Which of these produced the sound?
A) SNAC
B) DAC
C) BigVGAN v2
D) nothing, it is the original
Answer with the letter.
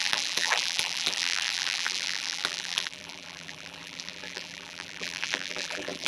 C